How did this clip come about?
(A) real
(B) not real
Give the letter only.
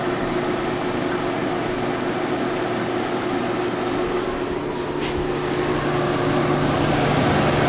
A